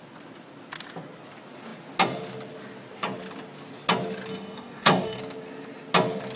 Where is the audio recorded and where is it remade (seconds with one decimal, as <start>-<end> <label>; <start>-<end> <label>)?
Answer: 0.0-4.3 recorded; 4.3-5.2 remade; 5.2-6.4 recorded